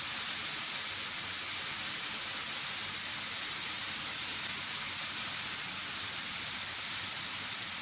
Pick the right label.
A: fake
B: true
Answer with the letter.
B